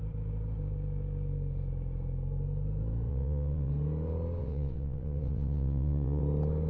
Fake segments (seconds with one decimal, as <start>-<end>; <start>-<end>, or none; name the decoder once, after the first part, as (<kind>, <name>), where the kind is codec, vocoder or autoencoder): 3.1-3.7 (vocoder, WaveNeXt); 4.4-6.2